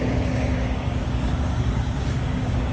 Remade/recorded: remade